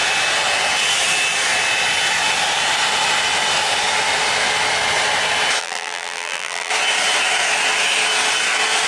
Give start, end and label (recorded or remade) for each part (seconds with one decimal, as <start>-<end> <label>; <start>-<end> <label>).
0.0-5.6 recorded; 5.6-6.7 remade; 6.7-8.9 recorded